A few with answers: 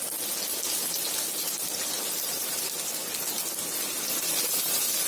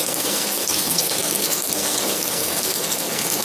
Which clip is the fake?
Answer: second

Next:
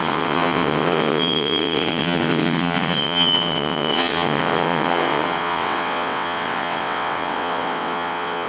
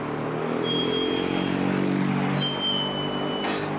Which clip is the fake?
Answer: first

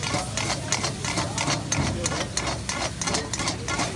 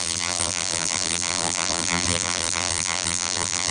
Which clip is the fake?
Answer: second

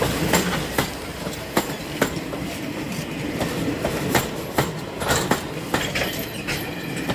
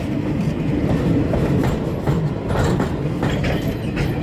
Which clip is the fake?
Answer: first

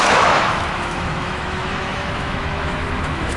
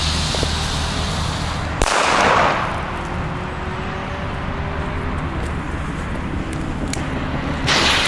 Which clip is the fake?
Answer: first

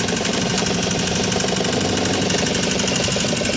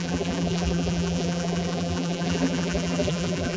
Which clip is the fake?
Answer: second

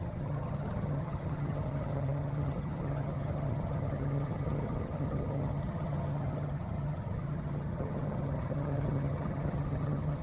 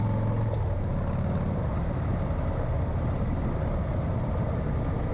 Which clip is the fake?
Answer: first